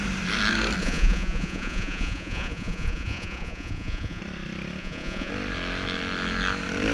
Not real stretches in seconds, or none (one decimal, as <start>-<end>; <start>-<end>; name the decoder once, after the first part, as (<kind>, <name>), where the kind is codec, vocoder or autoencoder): 0.8-4.2 (vocoder, Vocos); 4.8-5.3